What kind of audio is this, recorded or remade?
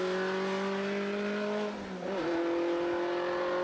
recorded